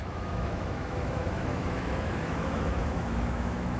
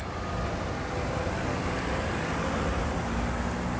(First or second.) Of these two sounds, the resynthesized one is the first